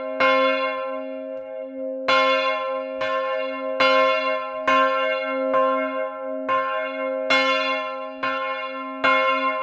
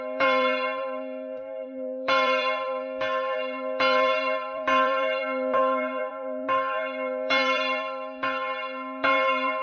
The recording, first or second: first